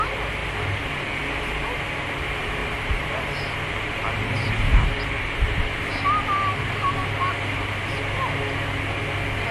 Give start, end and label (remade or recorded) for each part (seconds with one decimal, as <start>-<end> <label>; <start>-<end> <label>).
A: 0.0-2.6 recorded; 2.6-5.9 remade; 5.9-9.5 recorded

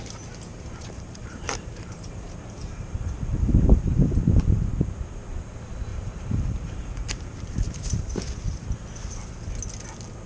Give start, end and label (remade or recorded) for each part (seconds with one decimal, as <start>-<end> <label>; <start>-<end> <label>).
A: 0.0-0.5 recorded; 0.5-4.7 remade; 4.7-5.9 recorded; 5.9-8.1 remade; 8.1-10.3 recorded